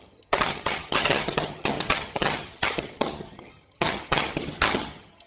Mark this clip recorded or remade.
remade